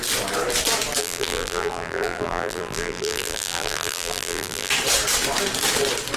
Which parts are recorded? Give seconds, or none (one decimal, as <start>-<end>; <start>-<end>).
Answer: 0.0-1.0; 4.7-6.2